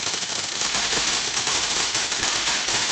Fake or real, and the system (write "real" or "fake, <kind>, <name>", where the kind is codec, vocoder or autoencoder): fake, autoencoder, DAC-VAE